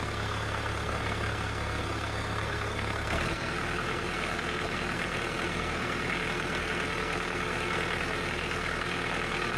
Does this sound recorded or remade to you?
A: remade